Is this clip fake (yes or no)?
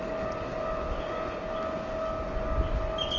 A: no